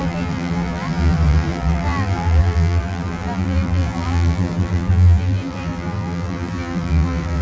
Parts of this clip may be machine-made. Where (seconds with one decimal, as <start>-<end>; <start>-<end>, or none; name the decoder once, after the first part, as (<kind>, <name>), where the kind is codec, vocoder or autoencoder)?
0.0-7.4 (vocoder, BigVGAN v2)